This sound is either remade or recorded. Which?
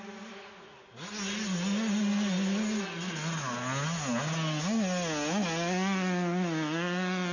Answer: recorded